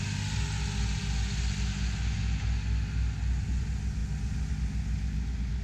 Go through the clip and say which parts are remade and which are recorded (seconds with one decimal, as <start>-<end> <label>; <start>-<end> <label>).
0.0-5.6 recorded